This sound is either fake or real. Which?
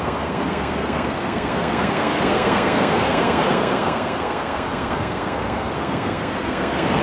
fake